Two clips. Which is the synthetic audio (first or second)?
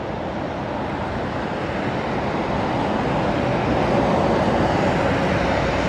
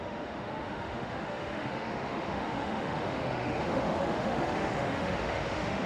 second